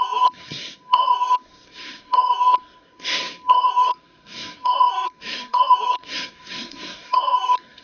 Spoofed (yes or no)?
yes